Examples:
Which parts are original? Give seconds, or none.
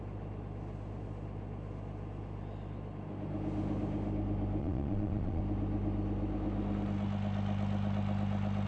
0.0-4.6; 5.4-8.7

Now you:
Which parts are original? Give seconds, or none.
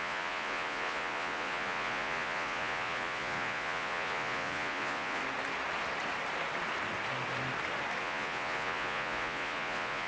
5.2-8.0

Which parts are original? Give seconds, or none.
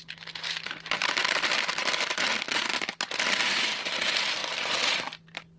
0.0-5.6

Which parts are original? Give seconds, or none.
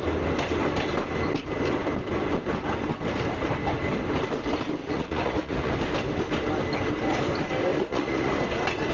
0.0-4.8; 5.7-7.7; 8.3-8.9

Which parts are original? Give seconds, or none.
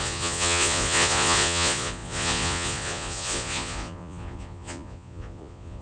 none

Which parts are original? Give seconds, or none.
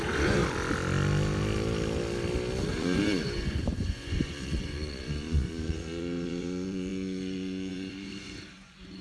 0.4-2.7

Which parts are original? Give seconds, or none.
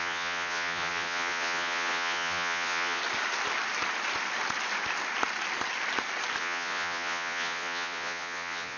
3.0-6.4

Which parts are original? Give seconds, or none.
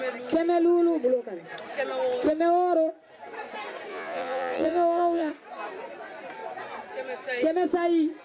0.0-3.9; 5.3-8.2